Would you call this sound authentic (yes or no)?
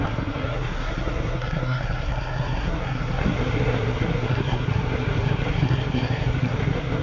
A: no